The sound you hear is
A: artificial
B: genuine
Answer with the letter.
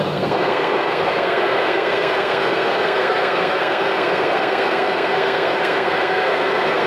A